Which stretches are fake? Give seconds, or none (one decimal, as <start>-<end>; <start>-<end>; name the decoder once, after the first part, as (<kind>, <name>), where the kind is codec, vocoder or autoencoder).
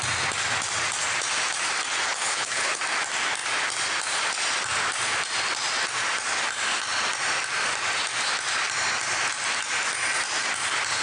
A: 2.1-2.8 (codec, HILCodec)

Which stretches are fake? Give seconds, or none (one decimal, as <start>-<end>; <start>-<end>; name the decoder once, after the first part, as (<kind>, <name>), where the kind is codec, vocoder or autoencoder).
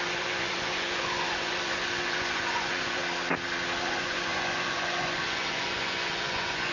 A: 0.0-3.0 (vocoder, Vocos); 3.8-6.7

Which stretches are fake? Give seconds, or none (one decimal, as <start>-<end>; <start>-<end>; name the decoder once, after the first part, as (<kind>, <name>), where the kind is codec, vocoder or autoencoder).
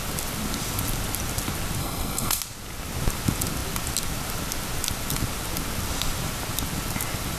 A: 1.8-2.4 (codec, SNAC)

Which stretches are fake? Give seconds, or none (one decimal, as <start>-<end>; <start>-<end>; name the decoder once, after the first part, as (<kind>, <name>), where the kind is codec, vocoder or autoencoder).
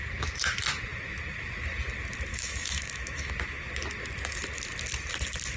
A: 2.3-3.3 (autoencoder, DAC-VAE)